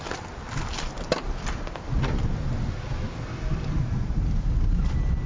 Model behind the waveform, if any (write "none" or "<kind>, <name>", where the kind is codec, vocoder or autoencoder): none